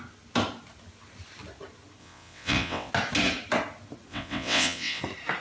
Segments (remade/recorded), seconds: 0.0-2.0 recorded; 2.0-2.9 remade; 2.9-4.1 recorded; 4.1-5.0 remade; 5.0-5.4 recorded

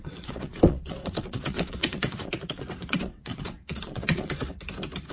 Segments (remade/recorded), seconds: 0.0-4.5 remade; 4.5-5.1 recorded

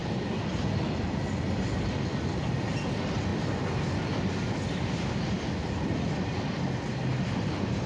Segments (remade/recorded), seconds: 0.0-7.9 recorded